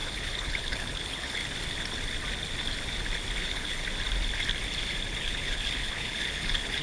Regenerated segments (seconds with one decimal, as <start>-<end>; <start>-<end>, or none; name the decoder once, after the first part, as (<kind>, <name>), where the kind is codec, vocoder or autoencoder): 0.0-1.4 (codec, HILCodec); 3.4-3.8; 5.2-6.8